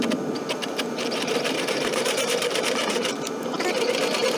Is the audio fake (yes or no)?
yes